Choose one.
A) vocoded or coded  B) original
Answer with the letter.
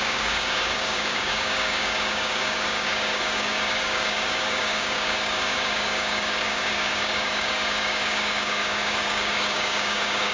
A